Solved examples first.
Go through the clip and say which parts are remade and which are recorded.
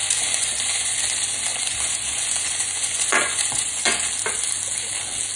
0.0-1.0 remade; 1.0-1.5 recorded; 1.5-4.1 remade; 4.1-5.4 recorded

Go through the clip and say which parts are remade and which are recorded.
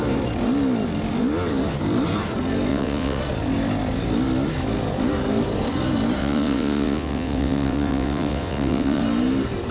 0.0-2.7 recorded; 2.7-3.2 remade; 3.2-6.2 recorded; 6.2-9.0 remade; 9.0-9.7 recorded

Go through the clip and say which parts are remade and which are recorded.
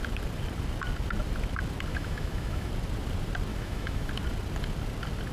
0.0-1.9 recorded; 1.9-2.7 remade; 2.7-3.5 recorded; 3.5-4.1 remade; 4.1-5.3 recorded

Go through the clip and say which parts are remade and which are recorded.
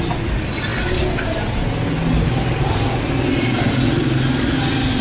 0.0-5.0 recorded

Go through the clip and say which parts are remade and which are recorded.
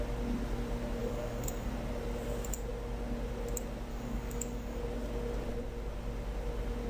0.0-1.0 recorded; 1.0-1.7 remade; 1.7-3.9 recorded; 3.9-4.8 remade; 4.8-6.9 recorded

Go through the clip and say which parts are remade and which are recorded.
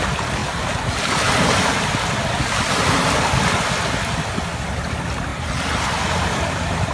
0.0-6.9 recorded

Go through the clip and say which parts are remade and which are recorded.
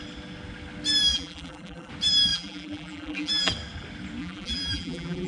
0.0-1.1 recorded; 1.1-1.9 remade; 1.9-2.3 recorded; 2.3-3.5 remade; 3.5-4.2 recorded; 4.2-5.3 remade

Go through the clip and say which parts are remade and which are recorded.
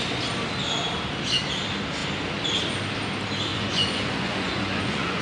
0.0-3.5 recorded; 3.5-5.2 remade